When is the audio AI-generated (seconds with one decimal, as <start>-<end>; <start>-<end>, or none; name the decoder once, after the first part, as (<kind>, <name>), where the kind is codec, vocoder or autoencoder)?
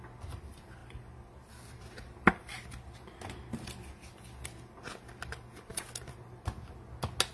none